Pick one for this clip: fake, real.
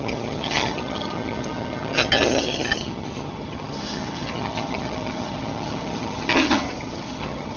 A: fake